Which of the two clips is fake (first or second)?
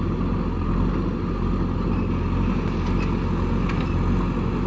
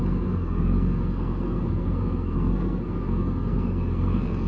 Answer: second